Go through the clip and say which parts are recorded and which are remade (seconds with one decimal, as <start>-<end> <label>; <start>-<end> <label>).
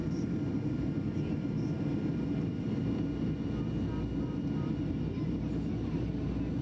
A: 0.0-6.6 recorded